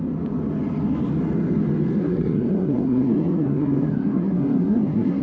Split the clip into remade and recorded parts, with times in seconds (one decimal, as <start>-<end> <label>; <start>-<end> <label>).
0.0-2.0 recorded; 2.0-5.2 remade